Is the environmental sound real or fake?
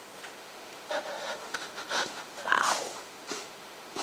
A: fake